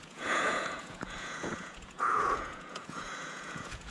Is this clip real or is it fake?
fake